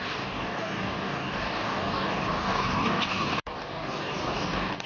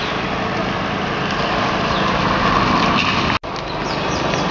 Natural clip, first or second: second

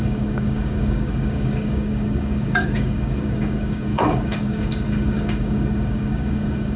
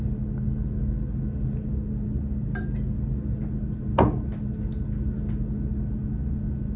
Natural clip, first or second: second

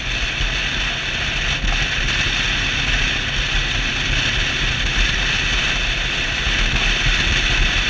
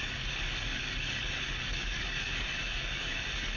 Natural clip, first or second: first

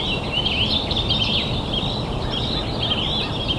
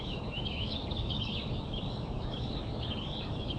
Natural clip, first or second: first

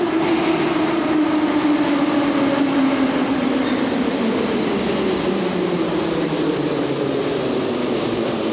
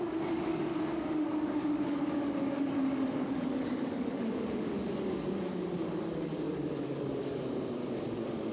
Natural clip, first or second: first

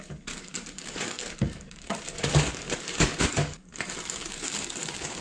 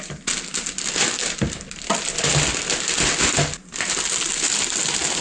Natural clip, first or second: second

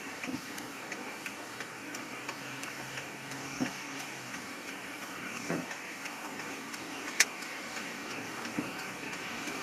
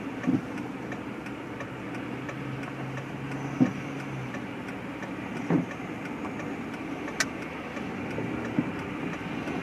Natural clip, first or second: second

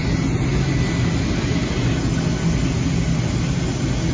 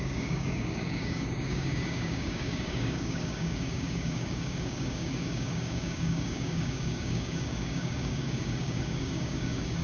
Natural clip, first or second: first